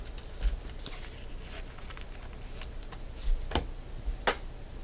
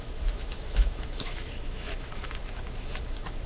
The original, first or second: first